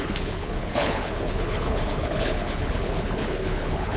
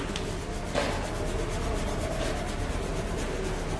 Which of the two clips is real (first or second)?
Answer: second